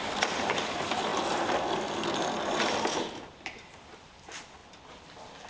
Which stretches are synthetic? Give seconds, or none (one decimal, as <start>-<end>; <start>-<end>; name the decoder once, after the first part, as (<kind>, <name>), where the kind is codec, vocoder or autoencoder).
0.0-5.5 (vocoder, BigVGAN v2)